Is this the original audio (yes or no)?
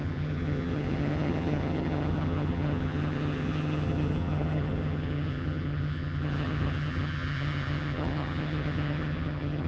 no